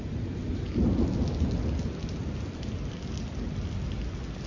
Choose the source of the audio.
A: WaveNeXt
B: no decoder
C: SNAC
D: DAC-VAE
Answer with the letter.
B